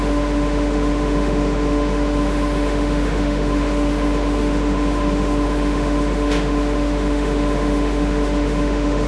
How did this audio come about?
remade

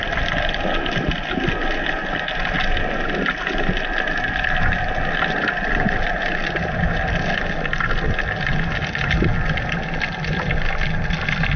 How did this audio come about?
recorded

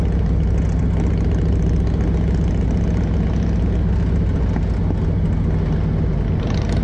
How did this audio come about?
recorded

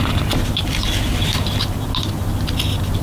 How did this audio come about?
recorded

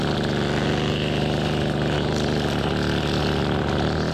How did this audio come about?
recorded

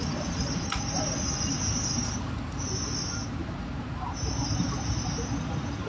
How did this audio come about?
recorded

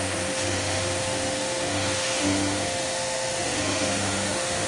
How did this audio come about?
remade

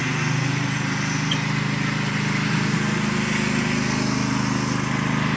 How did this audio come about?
recorded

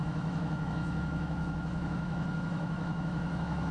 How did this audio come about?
remade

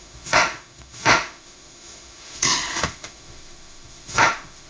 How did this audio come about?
remade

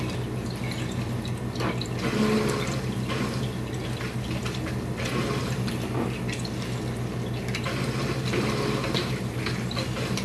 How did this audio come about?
recorded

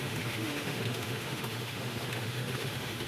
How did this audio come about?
remade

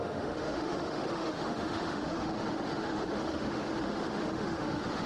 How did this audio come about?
remade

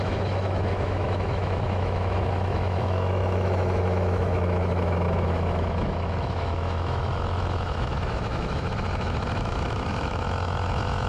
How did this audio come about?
remade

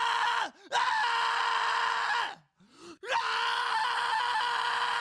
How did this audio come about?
recorded